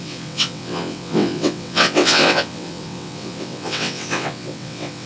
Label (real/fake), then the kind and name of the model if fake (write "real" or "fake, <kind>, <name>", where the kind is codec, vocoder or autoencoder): fake, vocoder, WaveNeXt